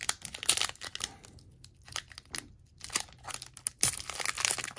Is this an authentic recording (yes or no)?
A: yes